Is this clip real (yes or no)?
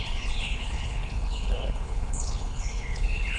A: no